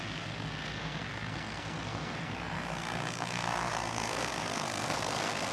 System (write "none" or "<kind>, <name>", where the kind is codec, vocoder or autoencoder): codec, SNAC